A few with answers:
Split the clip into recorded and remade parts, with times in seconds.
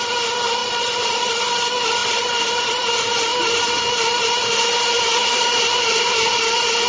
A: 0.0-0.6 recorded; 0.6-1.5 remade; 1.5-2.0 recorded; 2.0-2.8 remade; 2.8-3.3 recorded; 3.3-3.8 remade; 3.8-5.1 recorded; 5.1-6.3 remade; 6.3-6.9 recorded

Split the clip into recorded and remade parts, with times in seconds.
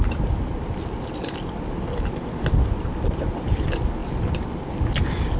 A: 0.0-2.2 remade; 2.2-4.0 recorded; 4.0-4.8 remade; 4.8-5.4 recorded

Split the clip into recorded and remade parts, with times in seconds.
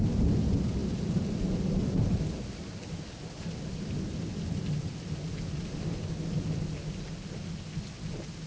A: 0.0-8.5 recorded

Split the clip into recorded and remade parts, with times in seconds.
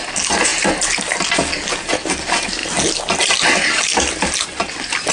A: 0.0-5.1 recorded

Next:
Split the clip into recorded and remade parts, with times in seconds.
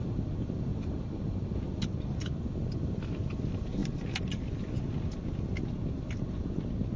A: 0.0-0.7 recorded; 0.7-1.6 remade; 1.6-7.0 recorded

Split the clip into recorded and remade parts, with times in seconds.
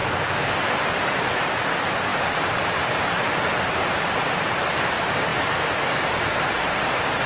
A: 0.0-0.9 recorded; 0.9-7.3 remade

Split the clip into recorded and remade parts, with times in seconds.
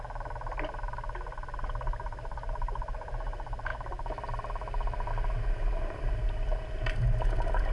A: 0.0-7.7 recorded